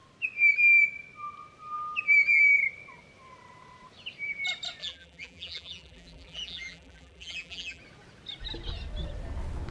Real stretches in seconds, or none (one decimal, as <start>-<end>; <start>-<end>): 0.0-4.8; 7.8-9.7